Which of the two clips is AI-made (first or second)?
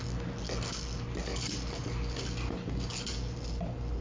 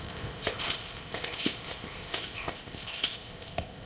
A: second